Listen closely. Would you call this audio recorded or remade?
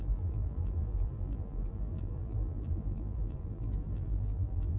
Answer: remade